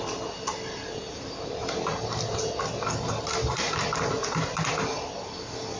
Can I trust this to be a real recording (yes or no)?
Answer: yes